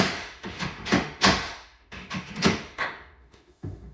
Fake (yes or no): yes